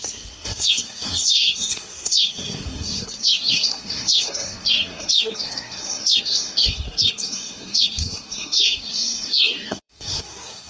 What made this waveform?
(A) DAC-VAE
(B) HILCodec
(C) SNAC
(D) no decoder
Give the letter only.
C